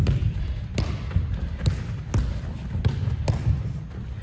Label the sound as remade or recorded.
recorded